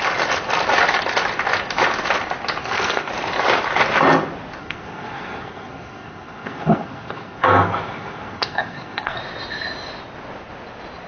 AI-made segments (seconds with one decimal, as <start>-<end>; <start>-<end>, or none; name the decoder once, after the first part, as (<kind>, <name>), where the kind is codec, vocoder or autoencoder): 2.6-3.1 (codec, SNAC); 4.6-9.2

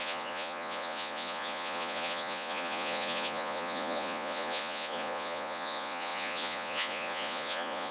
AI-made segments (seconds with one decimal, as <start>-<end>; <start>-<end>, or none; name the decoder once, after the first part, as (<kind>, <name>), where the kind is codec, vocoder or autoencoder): 0.0-7.9 (vocoder, Vocos)

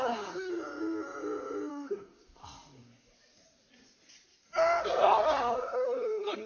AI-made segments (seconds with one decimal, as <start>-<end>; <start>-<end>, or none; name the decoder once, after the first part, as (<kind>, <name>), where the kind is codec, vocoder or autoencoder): 0.0-0.5 (codec, SNAC); 1.7-2.4; 4.8-6.5

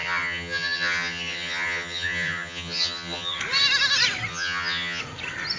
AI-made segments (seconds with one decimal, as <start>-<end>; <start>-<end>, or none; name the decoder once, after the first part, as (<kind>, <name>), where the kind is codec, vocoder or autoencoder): 0.0-3.4 (vocoder, HiFi-GAN); 4.3-5.0

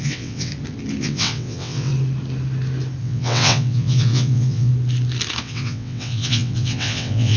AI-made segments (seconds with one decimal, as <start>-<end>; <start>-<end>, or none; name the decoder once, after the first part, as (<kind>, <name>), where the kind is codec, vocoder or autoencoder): 0.0-0.5 (vocoder, WaveNeXt); 1.0-1.9; 3.0-4.7; 5.4-7.4

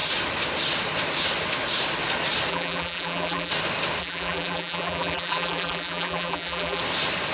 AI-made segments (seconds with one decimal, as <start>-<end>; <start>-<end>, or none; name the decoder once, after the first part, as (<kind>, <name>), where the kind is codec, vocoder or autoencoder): 2.5-3.5 (vocoder, BigVGAN v2); 4.0-6.8

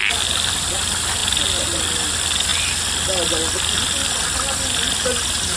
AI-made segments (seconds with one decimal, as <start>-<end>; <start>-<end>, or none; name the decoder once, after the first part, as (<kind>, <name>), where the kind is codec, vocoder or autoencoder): none

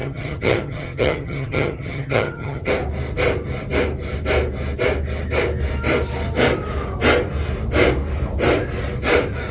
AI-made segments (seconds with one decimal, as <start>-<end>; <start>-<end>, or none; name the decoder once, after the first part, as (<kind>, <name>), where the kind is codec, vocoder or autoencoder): 0.0-2.7 (vocoder, HiFi-GAN)